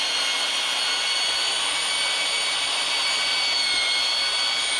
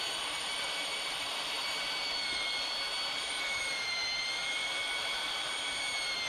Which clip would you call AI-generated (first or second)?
second